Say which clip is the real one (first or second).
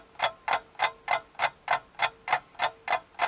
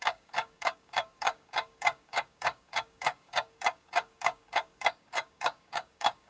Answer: first